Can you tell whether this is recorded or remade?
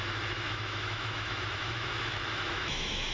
remade